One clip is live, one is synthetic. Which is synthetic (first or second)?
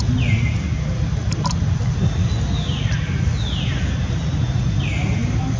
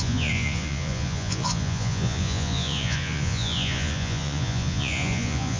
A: second